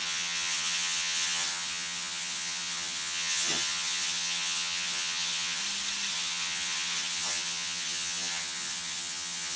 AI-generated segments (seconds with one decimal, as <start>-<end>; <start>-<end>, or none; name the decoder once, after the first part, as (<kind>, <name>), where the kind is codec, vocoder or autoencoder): 0.0-5.6 (vocoder, HiFi-GAN); 6.1-9.6